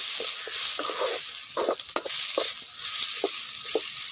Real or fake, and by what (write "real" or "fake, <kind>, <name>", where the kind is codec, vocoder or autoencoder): real